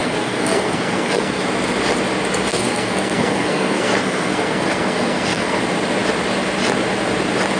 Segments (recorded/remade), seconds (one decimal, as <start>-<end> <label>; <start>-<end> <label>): 0.0-1.4 remade; 1.4-2.5 recorded; 2.5-5.6 remade; 5.6-7.6 recorded